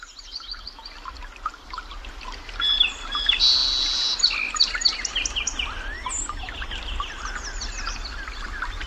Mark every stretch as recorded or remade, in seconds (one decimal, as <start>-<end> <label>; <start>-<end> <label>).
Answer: 0.0-8.9 recorded

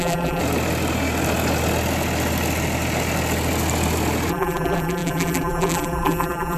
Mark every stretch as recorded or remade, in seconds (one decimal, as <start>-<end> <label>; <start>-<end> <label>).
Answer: 0.0-0.4 remade; 0.4-4.3 recorded; 4.3-6.6 remade

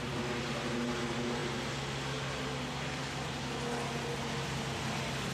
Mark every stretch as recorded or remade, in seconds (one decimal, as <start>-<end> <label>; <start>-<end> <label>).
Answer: 0.0-5.3 recorded

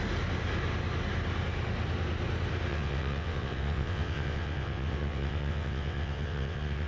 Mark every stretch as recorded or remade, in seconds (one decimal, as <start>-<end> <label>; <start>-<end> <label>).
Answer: 0.0-2.7 recorded; 2.7-6.9 remade

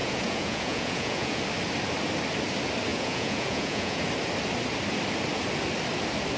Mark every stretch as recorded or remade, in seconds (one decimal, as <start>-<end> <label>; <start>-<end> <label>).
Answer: 0.0-1.4 remade; 1.4-2.9 recorded; 2.9-4.0 remade; 4.0-6.4 recorded

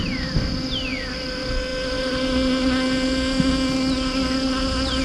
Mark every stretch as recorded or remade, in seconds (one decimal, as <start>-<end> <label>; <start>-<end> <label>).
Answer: 0.0-5.0 recorded

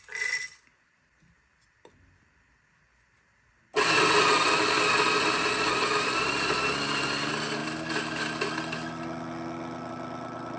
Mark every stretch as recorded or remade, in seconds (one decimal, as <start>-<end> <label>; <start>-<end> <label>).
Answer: 0.0-10.6 recorded

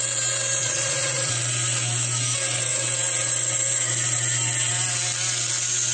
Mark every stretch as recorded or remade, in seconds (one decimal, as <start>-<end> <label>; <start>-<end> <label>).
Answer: 0.0-0.6 recorded; 0.6-1.3 remade; 1.3-5.9 recorded